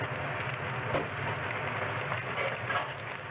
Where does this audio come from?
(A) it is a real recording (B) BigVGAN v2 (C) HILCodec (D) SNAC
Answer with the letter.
A